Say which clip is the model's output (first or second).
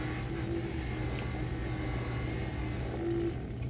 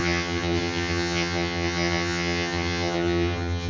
second